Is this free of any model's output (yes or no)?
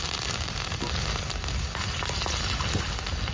yes